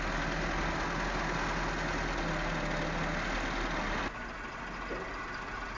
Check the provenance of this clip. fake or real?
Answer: real